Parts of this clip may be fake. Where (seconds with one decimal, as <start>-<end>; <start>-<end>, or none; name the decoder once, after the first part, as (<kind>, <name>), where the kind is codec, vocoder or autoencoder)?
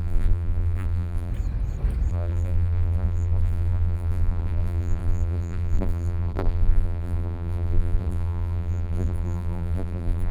0.0-1.3 (vocoder, BigVGAN v2); 2.1-10.3